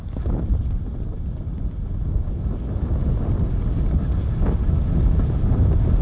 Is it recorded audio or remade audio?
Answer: recorded